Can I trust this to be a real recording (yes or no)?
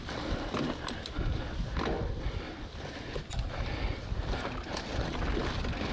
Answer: yes